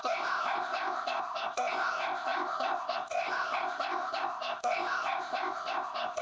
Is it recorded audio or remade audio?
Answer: remade